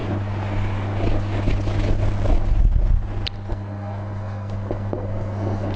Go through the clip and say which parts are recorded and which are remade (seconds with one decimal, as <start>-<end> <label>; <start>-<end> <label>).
0.0-3.5 recorded; 3.5-5.8 remade